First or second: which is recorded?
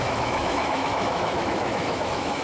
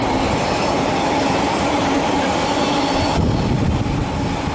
second